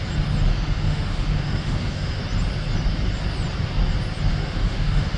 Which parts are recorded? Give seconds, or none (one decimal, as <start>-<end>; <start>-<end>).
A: 0.0-0.5; 2.2-4.3